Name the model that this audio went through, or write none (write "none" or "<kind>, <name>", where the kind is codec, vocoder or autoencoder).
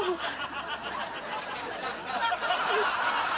vocoder, BigVGAN v2